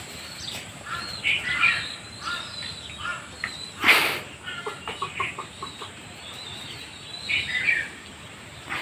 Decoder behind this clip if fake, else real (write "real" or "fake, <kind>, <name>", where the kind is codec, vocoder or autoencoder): real